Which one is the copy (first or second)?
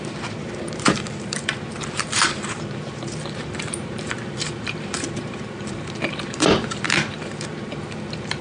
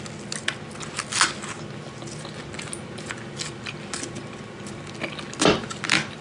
first